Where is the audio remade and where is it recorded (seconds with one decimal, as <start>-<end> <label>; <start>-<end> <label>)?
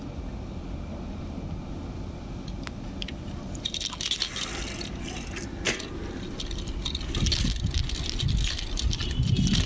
0.0-9.0 recorded; 9.0-9.7 remade